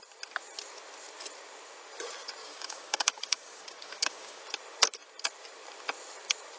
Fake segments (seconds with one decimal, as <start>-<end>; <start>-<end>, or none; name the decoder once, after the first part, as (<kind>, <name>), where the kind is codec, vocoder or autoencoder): 2.4-4.4 (codec, DAC)